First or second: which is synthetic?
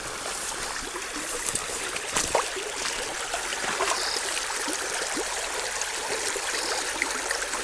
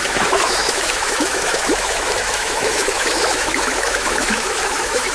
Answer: second